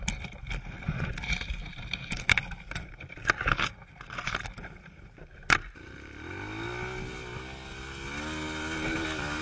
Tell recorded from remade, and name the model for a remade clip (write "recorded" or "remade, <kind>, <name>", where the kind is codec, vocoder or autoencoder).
recorded